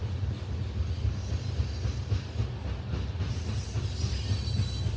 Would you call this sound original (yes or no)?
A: yes